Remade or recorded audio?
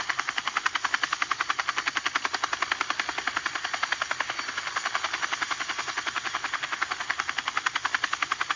recorded